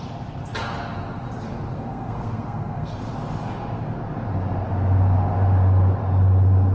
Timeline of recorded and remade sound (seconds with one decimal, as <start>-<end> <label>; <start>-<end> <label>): 0.0-1.7 recorded; 1.7-3.0 remade; 3.0-6.7 recorded